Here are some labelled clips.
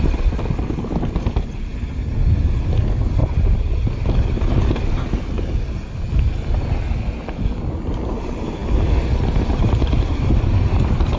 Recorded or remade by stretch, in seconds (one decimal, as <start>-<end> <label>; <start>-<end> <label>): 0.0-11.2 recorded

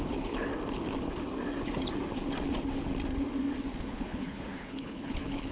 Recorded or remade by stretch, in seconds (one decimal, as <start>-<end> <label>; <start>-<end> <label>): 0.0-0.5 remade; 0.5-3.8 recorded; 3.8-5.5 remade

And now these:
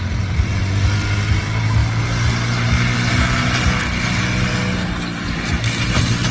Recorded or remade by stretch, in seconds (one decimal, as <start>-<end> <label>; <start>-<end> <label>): 0.0-0.5 remade; 0.5-1.4 recorded; 1.4-1.8 remade; 1.8-5.6 recorded; 5.6-6.3 remade

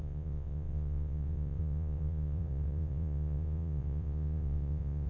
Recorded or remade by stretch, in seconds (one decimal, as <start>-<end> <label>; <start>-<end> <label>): 0.0-5.1 remade

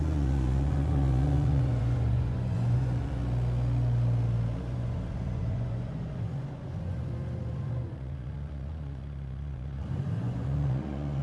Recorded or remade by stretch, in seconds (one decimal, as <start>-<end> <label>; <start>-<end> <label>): 0.0-3.2 remade; 3.2-4.6 recorded; 4.6-11.2 remade

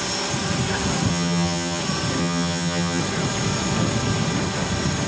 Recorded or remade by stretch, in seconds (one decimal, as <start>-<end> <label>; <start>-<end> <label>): 0.0-1.1 recorded; 1.1-1.8 remade; 1.8-2.2 recorded; 2.2-3.0 remade; 3.0-5.1 recorded

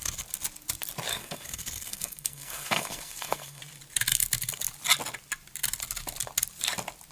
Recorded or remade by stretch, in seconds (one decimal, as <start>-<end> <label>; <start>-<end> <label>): 0.0-1.1 recorded; 1.1-3.6 remade; 3.6-7.1 recorded